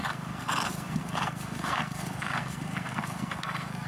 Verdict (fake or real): fake